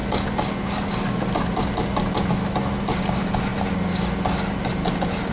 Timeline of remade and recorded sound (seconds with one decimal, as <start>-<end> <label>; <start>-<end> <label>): 0.0-5.3 recorded